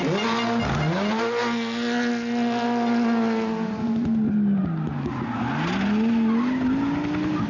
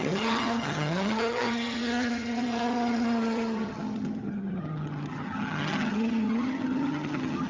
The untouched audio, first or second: first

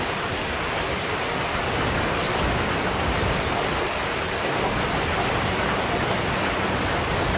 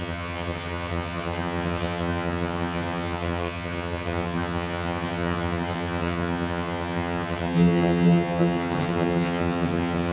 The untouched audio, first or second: first